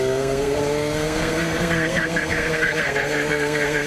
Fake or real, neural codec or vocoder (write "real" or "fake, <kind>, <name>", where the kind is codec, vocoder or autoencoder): fake, codec, SNAC